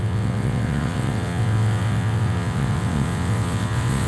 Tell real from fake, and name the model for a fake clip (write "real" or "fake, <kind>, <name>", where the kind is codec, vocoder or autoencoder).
fake, vocoder, WaveNeXt